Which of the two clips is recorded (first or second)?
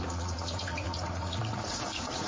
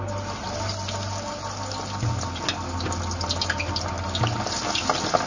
second